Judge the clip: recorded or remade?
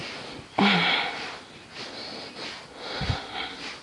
recorded